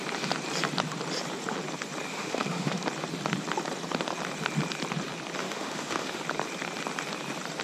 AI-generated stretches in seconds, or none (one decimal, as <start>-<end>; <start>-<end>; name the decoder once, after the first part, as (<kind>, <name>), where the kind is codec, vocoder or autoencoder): 2.1-2.8 (autoencoder, DAC-VAE); 5.4-6.2

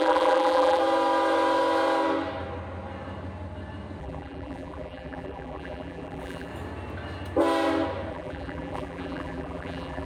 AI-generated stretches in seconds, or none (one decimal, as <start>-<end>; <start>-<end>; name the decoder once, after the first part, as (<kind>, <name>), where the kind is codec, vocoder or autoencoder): 0.0-0.8 (vocoder, BigVGAN v2); 4.0-6.5; 8.1-10.1

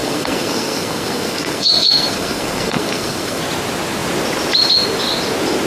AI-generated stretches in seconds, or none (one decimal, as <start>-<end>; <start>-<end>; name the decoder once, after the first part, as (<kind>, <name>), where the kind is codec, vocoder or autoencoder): 0.0-3.4 (codec, SNAC)

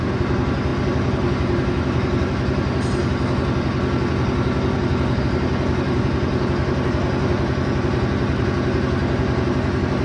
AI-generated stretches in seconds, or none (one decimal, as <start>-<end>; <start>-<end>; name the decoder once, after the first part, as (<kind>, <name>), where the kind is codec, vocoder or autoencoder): none

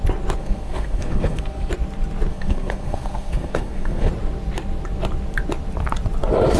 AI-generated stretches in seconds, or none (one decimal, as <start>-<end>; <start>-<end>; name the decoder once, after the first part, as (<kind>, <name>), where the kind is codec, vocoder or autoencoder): 0.4-1.7 (codec, SNAC); 2.3-4.1

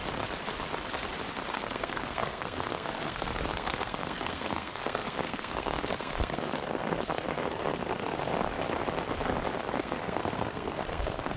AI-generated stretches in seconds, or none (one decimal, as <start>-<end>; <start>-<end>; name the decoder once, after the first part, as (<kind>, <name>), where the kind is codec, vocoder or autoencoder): 1.5-8.3 (codec, SNAC); 9.7-11.4